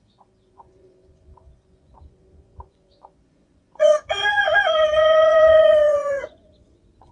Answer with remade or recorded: remade